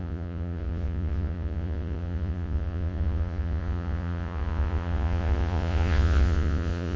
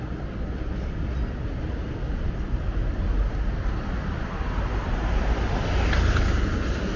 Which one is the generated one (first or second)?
first